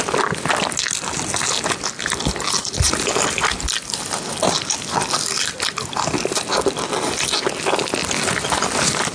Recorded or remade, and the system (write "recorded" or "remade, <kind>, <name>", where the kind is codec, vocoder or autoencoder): recorded